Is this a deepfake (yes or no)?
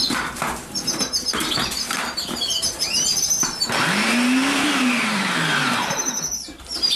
yes